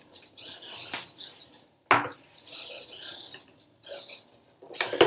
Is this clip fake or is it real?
real